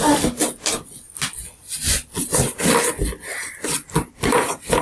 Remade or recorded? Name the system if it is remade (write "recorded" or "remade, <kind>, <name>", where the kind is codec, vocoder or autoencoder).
recorded